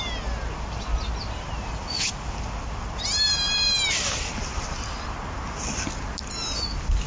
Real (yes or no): yes